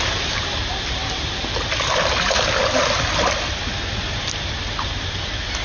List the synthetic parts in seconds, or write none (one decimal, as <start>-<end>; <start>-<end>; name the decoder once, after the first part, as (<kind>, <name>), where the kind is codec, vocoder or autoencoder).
0.0-1.0 (vocoder, BigVGAN v2); 4.4-5.6